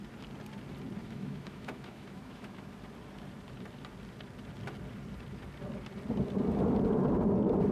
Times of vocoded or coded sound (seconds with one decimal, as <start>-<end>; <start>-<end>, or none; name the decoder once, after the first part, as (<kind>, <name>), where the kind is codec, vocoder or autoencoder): 1.0-2.7 (autoencoder, DAC-VAE)